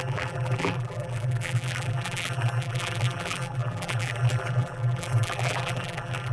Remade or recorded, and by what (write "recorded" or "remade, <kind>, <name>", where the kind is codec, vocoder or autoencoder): remade, vocoder, BigVGAN v2